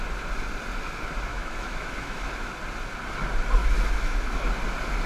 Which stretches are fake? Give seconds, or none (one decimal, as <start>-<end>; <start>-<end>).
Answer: 1.3-2.5; 3.6-4.4